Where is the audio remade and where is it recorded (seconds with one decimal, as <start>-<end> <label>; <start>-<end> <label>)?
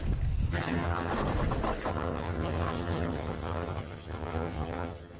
0.0-0.5 recorded; 0.5-1.1 remade; 1.1-1.9 recorded; 1.9-5.2 remade